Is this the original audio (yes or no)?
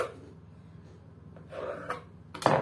yes